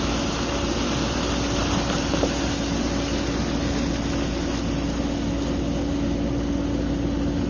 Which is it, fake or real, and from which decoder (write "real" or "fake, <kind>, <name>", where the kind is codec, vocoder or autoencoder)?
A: real